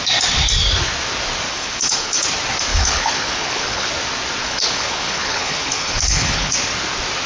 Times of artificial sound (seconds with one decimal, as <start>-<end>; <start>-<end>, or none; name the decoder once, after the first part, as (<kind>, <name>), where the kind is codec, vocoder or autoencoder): 1.5-2.2 (codec, HILCodec); 2.7-3.9; 4.4-6.5